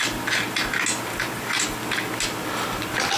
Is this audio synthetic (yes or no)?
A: no